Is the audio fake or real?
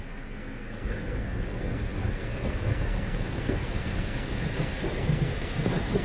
fake